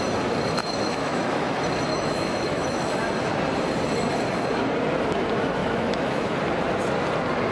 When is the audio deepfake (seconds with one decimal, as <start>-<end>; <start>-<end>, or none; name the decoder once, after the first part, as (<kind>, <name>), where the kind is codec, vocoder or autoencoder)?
0.6-1.5 (autoencoder, DAC-VAE); 1.9-2.9; 5.6-6.4